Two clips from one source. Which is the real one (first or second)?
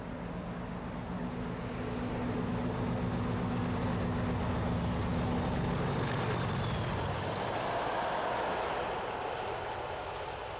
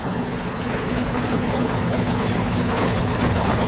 first